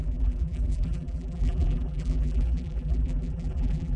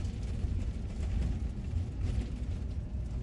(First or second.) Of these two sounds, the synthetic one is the first